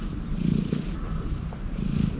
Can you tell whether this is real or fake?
real